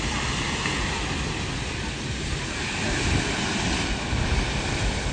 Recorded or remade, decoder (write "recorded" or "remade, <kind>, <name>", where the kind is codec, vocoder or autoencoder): recorded